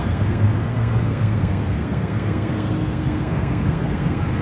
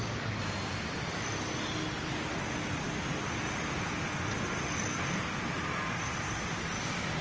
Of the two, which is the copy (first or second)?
first